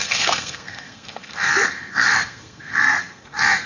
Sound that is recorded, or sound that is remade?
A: remade